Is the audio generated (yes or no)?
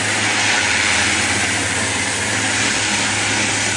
no